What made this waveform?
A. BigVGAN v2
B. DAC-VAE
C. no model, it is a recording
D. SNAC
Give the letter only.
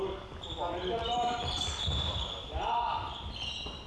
C